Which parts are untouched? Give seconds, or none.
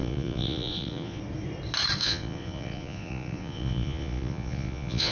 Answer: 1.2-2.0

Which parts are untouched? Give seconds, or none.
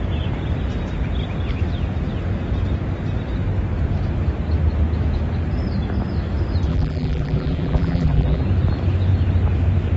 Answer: 0.0-6.7; 8.4-10.0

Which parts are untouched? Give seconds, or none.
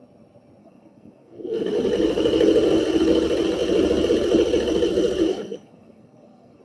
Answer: 0.0-0.6; 1.7-5.3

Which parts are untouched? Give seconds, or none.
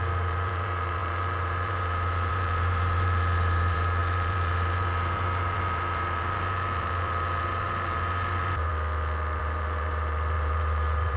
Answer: 8.7-9.4